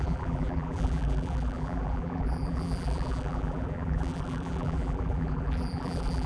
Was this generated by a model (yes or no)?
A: yes